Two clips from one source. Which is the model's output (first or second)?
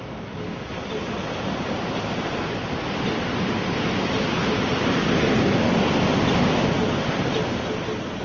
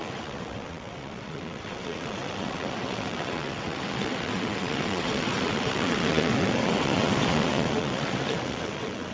second